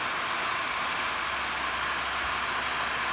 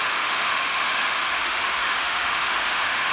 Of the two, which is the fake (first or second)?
second